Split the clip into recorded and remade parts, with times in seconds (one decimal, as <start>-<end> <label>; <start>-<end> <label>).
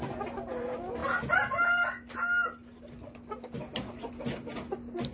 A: 0.0-5.1 recorded